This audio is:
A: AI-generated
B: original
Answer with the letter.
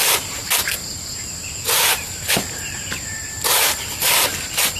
A